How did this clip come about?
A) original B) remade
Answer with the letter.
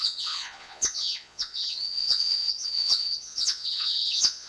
B